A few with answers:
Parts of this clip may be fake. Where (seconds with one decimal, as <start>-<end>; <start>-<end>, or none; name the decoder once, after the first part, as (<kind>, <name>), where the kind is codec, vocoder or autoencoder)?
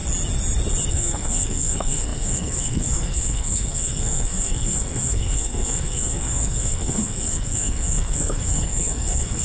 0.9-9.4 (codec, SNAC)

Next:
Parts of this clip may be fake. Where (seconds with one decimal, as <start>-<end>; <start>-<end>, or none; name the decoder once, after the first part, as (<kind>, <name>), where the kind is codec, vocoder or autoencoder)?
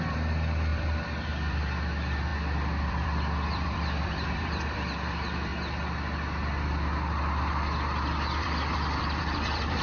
0.0-2.3 (vocoder, BigVGAN v2); 2.9-5.5; 8.4-9.8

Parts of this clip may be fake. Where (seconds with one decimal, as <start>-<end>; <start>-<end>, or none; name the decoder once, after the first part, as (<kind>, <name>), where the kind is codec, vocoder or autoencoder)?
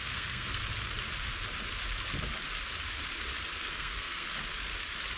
0.0-0.6 (codec, SNAC); 3.7-4.3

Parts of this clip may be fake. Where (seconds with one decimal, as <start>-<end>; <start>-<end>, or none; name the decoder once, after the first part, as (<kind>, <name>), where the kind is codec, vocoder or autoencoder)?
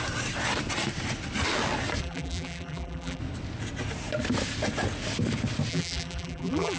2.0-3.2 (vocoder, BigVGAN v2); 5.7-6.8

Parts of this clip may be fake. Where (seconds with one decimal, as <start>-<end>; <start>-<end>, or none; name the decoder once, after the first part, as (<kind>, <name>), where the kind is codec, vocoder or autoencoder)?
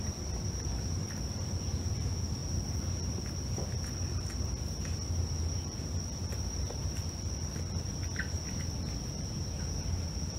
none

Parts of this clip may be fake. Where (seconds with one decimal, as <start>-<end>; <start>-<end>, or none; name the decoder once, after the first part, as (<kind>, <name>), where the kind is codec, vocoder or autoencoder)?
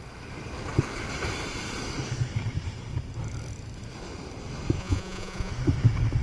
4.8-5.5 (vocoder, Vocos)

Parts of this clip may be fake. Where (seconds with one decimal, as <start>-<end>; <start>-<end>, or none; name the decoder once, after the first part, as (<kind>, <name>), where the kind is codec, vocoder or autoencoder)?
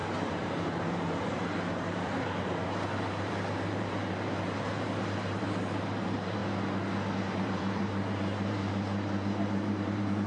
0.0-6.4 (vocoder, BigVGAN v2); 7.2-10.3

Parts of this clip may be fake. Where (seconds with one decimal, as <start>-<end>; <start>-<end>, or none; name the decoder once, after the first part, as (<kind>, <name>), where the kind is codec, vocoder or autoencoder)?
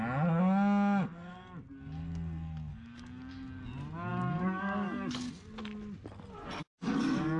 2.7-3.3 (codec, DAC); 4.1-5.3; 6.6-7.4